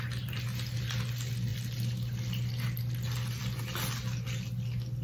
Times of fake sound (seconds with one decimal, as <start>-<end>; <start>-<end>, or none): none